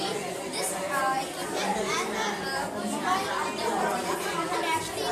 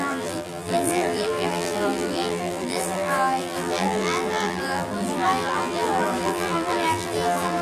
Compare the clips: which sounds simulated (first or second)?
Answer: second